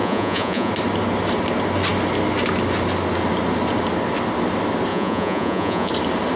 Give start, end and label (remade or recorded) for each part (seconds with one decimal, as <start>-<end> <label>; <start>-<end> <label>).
0.0-0.7 remade; 0.7-4.9 recorded; 4.9-5.9 remade; 5.9-6.4 recorded